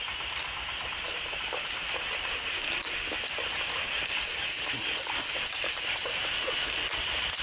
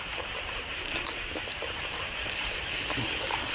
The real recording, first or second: first